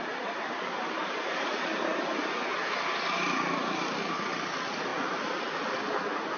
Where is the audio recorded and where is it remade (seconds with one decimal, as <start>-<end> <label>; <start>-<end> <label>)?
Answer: 0.0-6.4 recorded